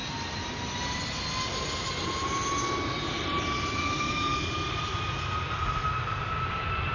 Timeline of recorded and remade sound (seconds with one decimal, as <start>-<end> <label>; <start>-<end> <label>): 0.0-6.9 recorded